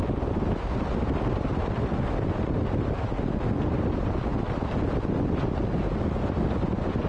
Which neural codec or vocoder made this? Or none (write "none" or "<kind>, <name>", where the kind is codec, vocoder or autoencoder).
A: none